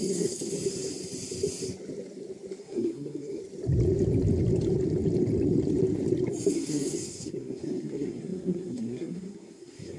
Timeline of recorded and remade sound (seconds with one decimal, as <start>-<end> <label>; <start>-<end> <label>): 0.0-0.5 remade; 0.5-2.6 recorded; 2.6-3.4 remade; 3.4-6.5 recorded; 6.5-10.0 remade

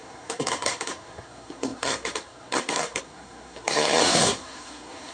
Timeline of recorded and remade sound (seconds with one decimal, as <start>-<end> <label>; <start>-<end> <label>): 0.0-5.1 remade

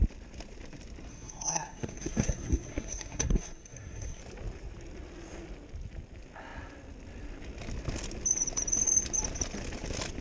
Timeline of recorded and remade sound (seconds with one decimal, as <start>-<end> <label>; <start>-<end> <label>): 0.0-1.1 recorded; 1.1-4.2 remade; 4.2-10.2 recorded